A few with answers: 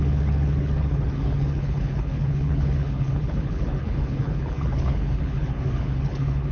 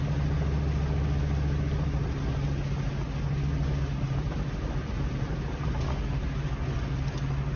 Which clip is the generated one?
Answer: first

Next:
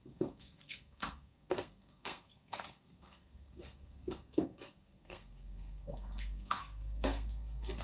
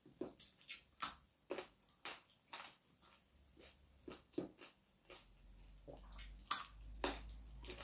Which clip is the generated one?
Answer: first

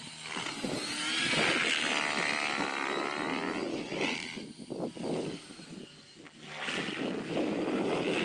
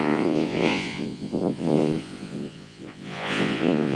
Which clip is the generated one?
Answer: second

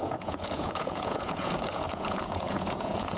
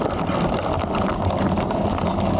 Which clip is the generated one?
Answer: first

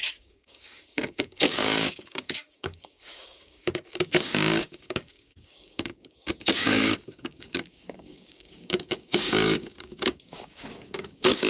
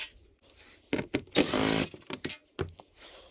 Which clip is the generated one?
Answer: first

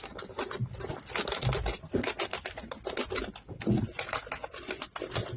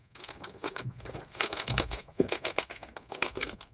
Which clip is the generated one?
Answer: second